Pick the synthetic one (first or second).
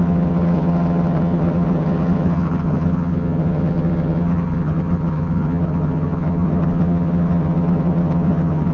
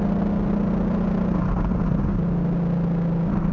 first